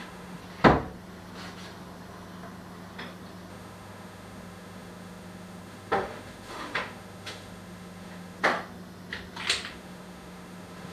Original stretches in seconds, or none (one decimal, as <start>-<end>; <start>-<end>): 0.4-3.5; 8.4-9.7